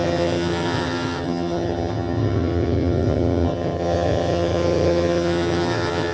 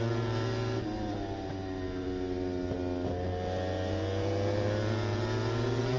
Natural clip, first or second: second